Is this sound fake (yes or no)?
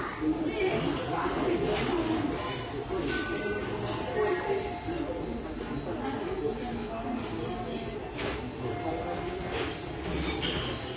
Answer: no